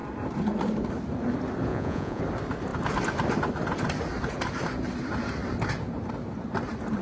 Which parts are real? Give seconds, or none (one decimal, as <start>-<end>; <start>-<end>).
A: 0.0-1.7; 2.2-7.0